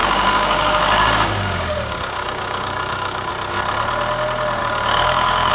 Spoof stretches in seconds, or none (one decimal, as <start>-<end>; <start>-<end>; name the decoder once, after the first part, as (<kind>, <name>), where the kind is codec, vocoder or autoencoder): 0.0-3.3 (codec, DAC); 4.6-5.5